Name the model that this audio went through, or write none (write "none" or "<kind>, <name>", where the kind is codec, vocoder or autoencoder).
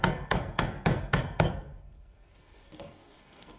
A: codec, SNAC